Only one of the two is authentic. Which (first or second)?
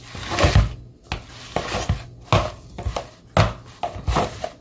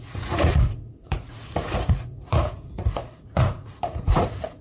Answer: first